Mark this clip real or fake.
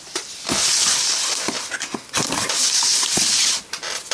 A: real